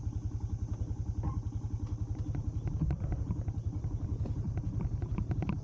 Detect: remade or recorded recorded